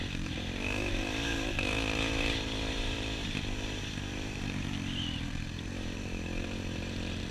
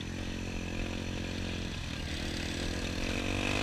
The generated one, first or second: first